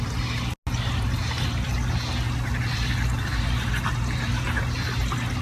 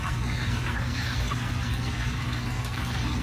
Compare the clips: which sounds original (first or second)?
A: first